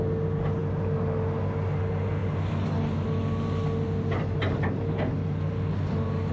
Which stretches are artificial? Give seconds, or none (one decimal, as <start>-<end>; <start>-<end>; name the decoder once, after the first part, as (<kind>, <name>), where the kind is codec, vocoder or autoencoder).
none